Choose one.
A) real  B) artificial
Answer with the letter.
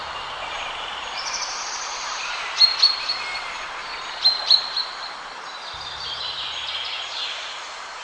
B